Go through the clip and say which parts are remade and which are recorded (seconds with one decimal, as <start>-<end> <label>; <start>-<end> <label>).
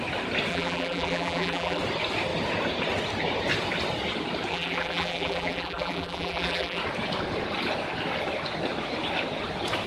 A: 0.0-0.5 recorded; 0.5-1.8 remade; 1.8-4.5 recorded; 4.5-6.8 remade; 6.8-9.9 recorded